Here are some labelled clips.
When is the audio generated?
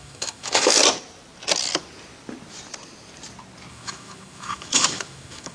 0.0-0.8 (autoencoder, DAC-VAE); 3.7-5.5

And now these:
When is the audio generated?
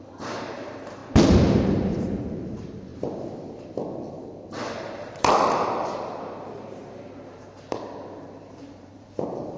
0.0-2.9 (vocoder, BigVGAN v2); 4.5-9.6